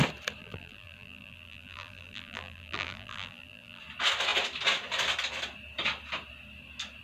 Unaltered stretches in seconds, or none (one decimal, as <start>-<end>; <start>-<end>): 0.0-0.4; 3.8-7.0